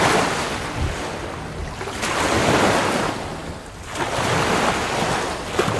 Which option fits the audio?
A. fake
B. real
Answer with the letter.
B